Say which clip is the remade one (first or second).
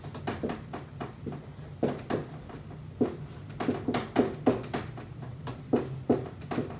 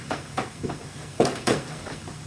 second